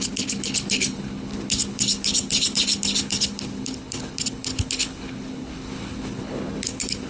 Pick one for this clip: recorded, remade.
remade